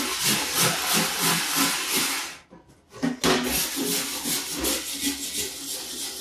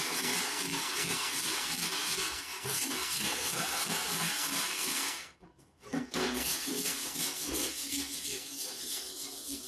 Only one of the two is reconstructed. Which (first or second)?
second